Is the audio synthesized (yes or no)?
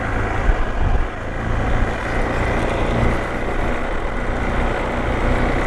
no